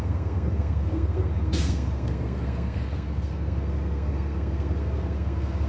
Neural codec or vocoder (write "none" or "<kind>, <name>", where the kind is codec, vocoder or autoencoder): codec, SNAC